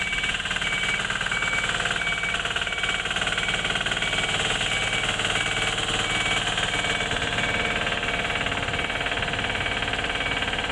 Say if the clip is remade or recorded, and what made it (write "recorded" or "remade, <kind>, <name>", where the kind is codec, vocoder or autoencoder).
recorded